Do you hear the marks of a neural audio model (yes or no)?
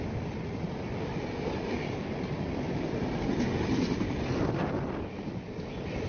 no